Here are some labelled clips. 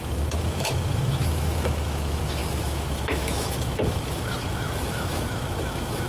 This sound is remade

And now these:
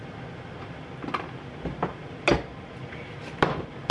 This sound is remade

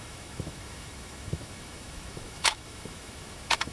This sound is remade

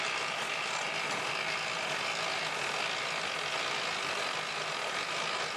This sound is recorded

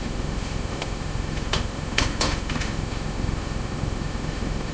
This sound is remade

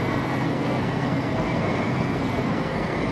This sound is remade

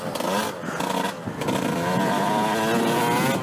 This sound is recorded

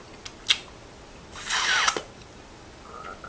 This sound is recorded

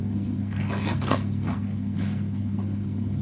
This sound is remade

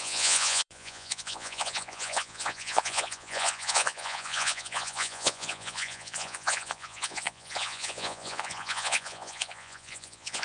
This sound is remade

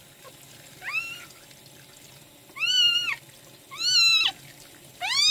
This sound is recorded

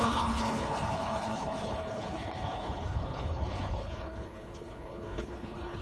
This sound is remade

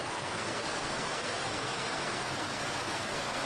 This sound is remade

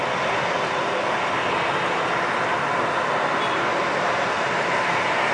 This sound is recorded